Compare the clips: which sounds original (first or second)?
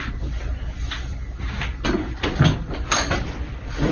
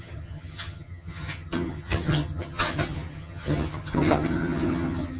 first